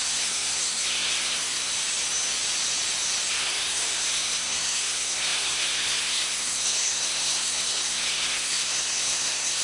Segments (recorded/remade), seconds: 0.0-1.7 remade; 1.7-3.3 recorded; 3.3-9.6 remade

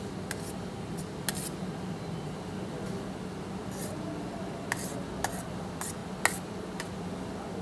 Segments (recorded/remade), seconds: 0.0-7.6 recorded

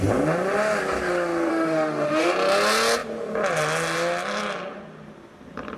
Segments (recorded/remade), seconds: 0.0-1.5 recorded; 1.5-2.3 remade; 2.3-5.8 recorded